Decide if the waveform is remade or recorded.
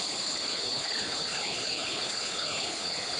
remade